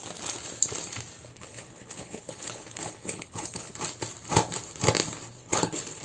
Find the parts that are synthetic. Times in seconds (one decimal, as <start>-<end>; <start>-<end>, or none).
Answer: 1.3-3.7; 5.4-6.0